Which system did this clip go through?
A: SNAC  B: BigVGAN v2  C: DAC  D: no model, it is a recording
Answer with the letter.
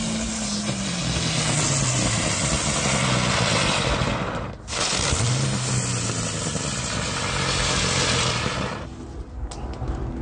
D